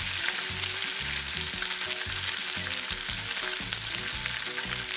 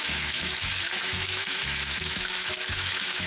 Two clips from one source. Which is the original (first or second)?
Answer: first